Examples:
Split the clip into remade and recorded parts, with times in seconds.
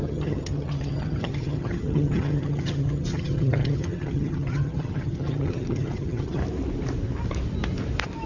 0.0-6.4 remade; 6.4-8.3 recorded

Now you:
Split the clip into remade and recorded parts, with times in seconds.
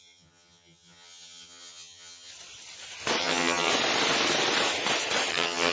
0.0-2.3 remade; 2.3-3.2 recorded; 3.2-3.7 remade; 3.7-5.3 recorded; 5.3-5.7 remade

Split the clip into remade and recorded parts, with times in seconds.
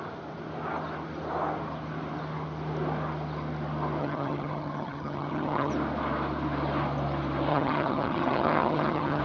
0.0-4.0 recorded; 4.0-5.7 remade; 5.7-7.5 recorded; 7.5-9.2 remade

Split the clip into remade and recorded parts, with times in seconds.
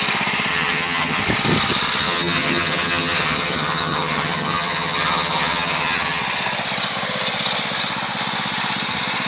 0.0-0.5 recorded; 0.5-1.2 remade; 1.2-2.0 recorded; 2.0-6.2 remade; 6.2-9.3 recorded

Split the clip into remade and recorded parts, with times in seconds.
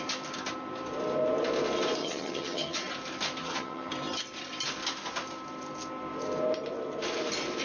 0.0-2.0 recorded; 2.0-2.8 remade; 2.8-3.4 recorded; 3.4-3.9 remade; 3.9-7.6 recorded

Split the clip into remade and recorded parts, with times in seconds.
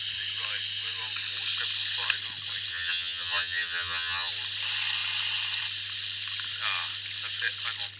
0.0-2.7 recorded; 2.7-4.3 remade; 4.3-8.0 recorded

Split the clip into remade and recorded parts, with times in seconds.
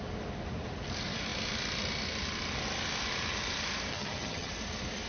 0.0-3.9 recorded; 3.9-4.5 remade; 4.5-5.1 recorded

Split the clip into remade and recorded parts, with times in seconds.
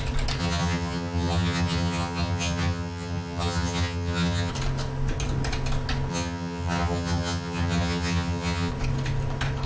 0.0-0.4 recorded; 0.4-4.5 remade; 4.5-6.1 recorded; 6.1-8.7 remade; 8.7-9.7 recorded